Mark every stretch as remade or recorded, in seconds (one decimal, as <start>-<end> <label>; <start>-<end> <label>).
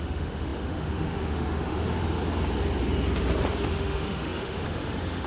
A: 0.0-2.0 remade; 2.0-3.7 recorded; 3.7-5.3 remade